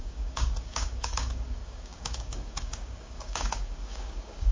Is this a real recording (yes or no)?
no